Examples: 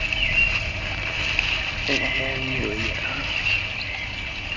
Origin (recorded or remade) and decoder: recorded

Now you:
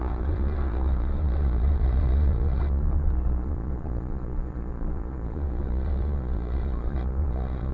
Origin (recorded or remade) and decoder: remade, vocoder, Vocos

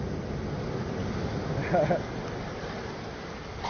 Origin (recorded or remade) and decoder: recorded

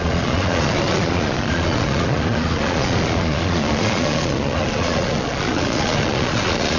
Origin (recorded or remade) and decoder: remade, vocoder, Vocos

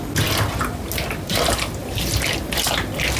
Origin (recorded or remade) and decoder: recorded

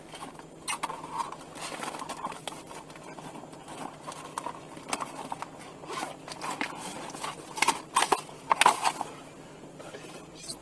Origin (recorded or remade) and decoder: recorded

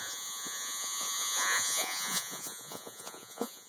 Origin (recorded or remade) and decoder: remade, vocoder, Vocos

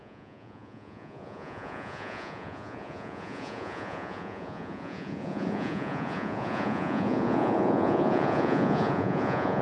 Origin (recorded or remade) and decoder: remade, vocoder, Vocos